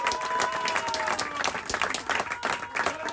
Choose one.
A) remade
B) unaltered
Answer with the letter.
B